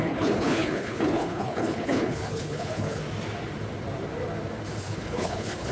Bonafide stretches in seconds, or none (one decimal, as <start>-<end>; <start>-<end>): 3.0-4.8